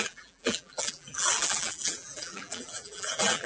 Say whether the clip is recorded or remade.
remade